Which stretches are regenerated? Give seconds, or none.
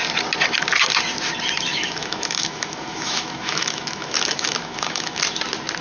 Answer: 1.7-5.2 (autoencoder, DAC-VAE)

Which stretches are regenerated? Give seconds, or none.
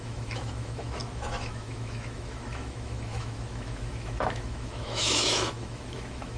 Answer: 0.0-6.4 (autoencoder, DAC-VAE)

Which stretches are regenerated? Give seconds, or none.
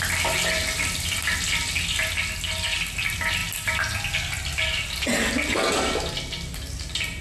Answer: none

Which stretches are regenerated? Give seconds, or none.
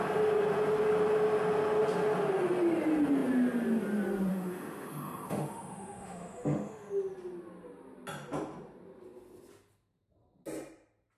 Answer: 4.3-6.9 (autoencoder, DAC-VAE)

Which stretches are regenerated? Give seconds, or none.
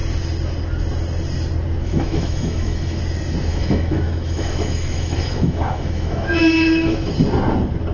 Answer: 1.8-3.0 (autoencoder, DAC-VAE); 3.5-7.1